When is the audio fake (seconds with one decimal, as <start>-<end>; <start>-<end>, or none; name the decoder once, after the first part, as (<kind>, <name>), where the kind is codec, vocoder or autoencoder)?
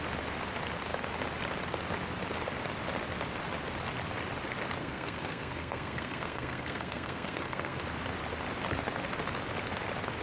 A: 4.8-7.8 (codec, SNAC)